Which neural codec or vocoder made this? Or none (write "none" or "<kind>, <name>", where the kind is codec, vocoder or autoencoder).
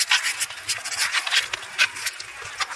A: none